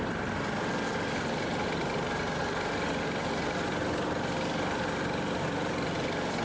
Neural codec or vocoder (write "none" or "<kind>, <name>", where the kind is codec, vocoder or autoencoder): none